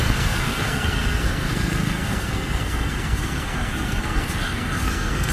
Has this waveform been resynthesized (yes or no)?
yes